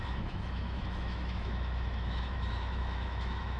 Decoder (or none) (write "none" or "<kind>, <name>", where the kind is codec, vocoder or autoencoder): autoencoder, DAC-VAE